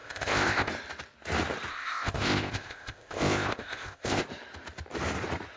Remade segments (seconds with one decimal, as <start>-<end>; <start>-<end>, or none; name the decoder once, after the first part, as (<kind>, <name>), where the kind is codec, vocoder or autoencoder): 0.0-0.7 (codec, ZipCodec); 1.7-4.2